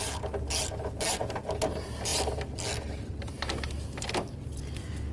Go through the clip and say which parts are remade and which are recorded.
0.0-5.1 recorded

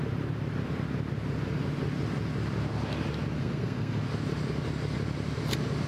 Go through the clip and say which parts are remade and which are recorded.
0.0-3.4 recorded; 3.4-4.0 remade; 4.0-5.9 recorded

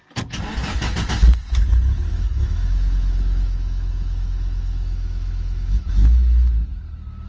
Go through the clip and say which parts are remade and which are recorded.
0.0-2.1 recorded; 2.1-6.5 remade; 6.5-7.3 recorded

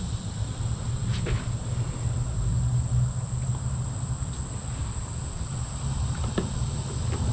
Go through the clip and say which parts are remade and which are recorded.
0.0-7.3 recorded

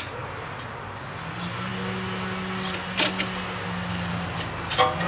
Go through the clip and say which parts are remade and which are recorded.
0.0-5.1 recorded

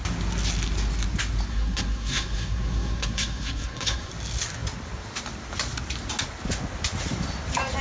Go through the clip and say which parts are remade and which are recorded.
0.0-1.5 recorded; 1.5-4.1 remade; 4.1-7.8 recorded

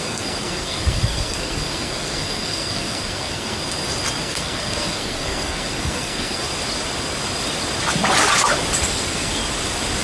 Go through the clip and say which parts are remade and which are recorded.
0.0-3.6 remade; 3.6-4.2 recorded; 4.2-6.4 remade; 6.4-8.9 recorded; 8.9-9.4 remade; 9.4-10.0 recorded